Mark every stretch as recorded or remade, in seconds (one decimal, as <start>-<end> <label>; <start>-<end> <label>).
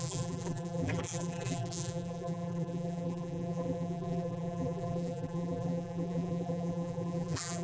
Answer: 0.0-7.6 remade